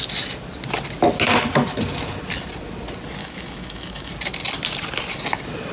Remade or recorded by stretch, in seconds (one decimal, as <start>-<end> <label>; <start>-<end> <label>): 0.0-3.2 recorded; 3.2-4.1 remade; 4.1-5.7 recorded